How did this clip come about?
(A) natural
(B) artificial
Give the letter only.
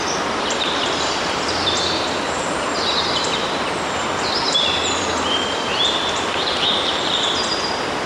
B